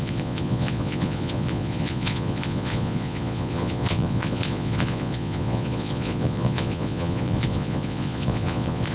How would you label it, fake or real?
fake